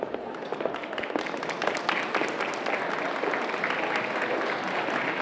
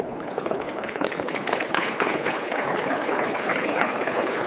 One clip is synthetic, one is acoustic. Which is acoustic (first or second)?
first